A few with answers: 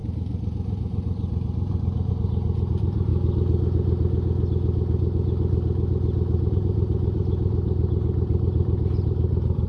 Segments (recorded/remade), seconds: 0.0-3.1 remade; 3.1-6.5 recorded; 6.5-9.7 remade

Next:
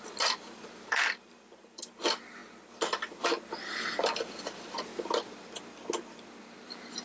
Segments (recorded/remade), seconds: 0.0-2.4 remade; 2.4-4.4 recorded; 4.4-4.9 remade; 4.9-6.4 recorded; 6.4-7.0 remade

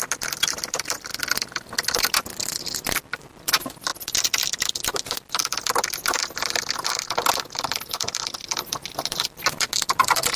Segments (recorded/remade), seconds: 0.0-10.4 recorded

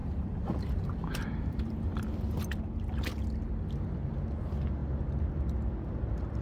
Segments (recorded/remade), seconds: 0.0-2.6 remade; 2.6-4.8 recorded; 4.8-5.4 remade; 5.4-6.4 recorded

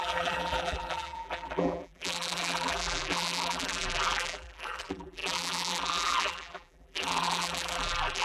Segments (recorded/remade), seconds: 0.0-8.2 remade

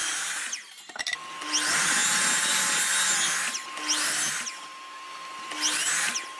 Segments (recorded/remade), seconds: 0.0-6.4 recorded

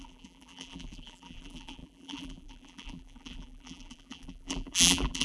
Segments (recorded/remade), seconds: 0.0-5.2 remade

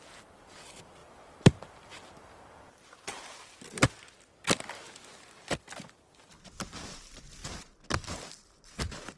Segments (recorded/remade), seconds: 0.0-1.0 recorded; 1.0-3.4 remade; 3.4-6.3 recorded; 6.3-7.0 remade; 7.0-9.2 recorded